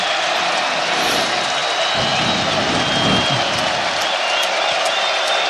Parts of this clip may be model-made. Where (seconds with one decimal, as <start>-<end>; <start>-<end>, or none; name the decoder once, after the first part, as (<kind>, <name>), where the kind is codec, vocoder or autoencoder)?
none